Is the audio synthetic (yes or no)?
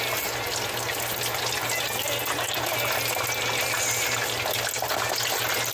no